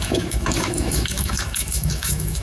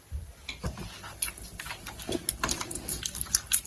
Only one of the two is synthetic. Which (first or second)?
first